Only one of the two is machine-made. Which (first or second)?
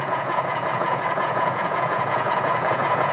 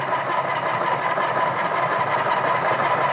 first